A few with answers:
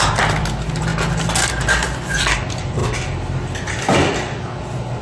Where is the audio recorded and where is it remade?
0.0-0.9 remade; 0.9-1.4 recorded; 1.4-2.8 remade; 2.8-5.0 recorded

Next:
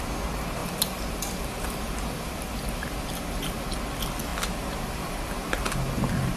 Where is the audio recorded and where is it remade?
0.0-0.6 recorded; 0.6-3.7 remade; 3.7-6.4 recorded

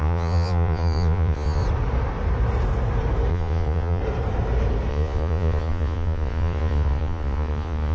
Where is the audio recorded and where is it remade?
0.0-1.6 remade; 1.6-3.3 recorded; 3.3-4.0 remade; 4.0-4.9 recorded; 4.9-7.9 remade

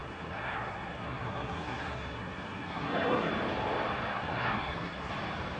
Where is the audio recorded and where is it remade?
0.0-3.3 remade; 3.3-4.1 recorded; 4.1-5.1 remade; 5.1-5.6 recorded